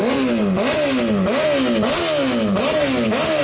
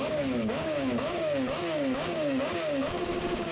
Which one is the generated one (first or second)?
second